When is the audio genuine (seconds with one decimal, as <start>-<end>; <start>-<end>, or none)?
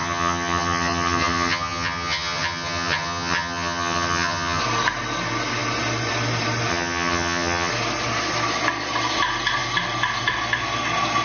4.6-6.7; 7.7-11.2